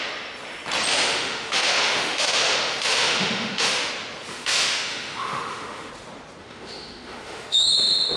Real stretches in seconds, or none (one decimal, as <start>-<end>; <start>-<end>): 0.0-0.9; 3.9-4.3; 5.9-6.4; 7.7-8.2